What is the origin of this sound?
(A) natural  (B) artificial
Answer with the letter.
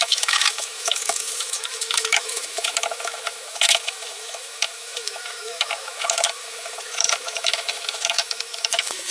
B